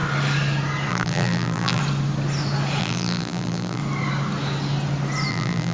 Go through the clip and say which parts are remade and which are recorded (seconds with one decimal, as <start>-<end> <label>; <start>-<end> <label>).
0.0-0.9 recorded; 0.9-1.8 remade; 1.8-2.8 recorded; 2.8-3.8 remade; 3.8-5.3 recorded; 5.3-5.7 remade